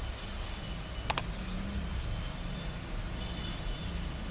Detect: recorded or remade recorded